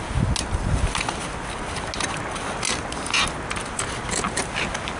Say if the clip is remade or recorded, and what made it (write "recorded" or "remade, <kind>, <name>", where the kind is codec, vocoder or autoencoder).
recorded